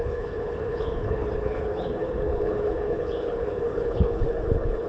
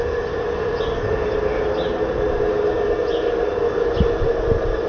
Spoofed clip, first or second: first